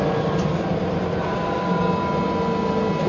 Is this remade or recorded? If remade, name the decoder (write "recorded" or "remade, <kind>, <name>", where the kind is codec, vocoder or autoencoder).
recorded